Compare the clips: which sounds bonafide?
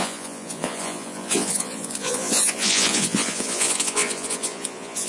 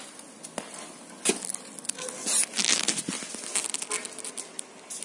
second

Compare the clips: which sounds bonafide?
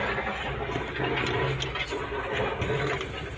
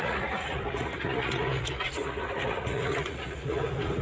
first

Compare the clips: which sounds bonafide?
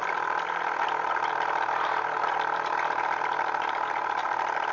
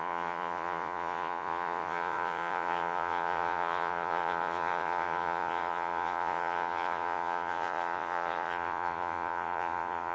first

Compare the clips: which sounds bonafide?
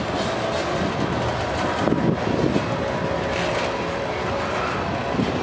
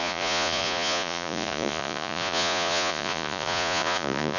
first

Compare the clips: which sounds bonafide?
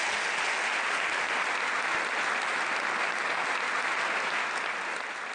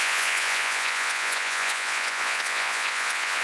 first